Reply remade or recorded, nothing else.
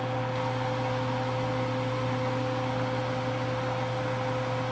recorded